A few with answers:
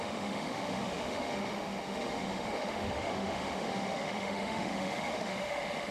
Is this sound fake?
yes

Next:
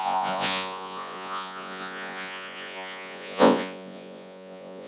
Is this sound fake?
yes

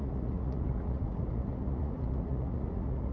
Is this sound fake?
yes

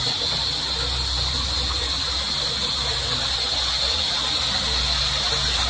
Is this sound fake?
no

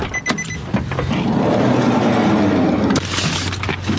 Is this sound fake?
no